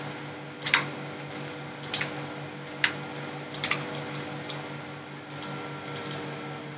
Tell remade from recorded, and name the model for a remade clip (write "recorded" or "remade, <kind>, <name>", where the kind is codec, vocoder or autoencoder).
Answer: recorded